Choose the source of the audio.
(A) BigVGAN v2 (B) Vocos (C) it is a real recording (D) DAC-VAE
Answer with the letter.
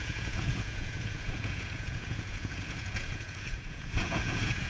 B